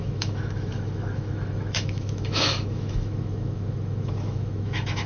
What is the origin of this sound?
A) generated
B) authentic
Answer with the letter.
A